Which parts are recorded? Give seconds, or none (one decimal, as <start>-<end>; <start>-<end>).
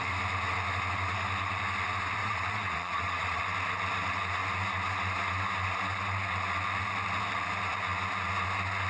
0.0-2.2; 3.4-8.9